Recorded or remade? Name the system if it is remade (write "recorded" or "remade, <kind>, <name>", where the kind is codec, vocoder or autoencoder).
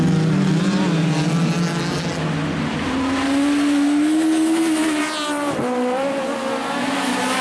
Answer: recorded